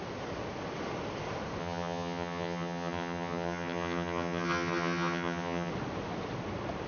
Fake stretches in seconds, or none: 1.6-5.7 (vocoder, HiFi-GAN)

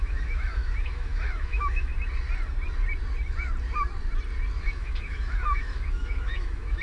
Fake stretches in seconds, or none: 0.0-1.9 (autoencoder, DAC-VAE); 4.6-6.8

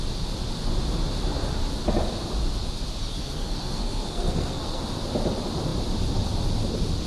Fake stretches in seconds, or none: 3.0-4.8 (codec, SNAC)